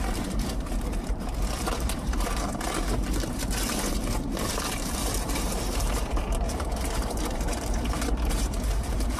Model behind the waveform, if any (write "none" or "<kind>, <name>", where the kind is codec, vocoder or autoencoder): vocoder, BigVGAN v2